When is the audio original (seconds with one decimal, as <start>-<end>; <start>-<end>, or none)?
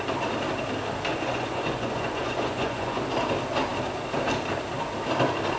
0.0-1.1; 3.0-5.6